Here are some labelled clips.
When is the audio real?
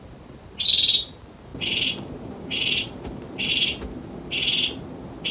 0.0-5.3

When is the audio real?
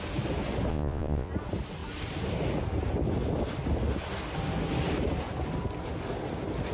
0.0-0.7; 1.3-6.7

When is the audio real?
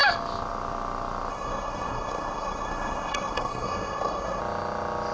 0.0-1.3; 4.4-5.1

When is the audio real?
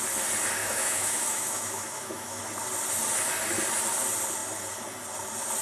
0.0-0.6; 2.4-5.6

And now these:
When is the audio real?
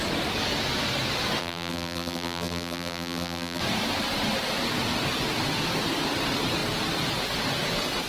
0.0-1.4; 3.6-8.1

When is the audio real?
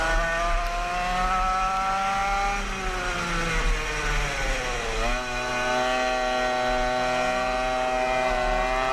0.0-8.9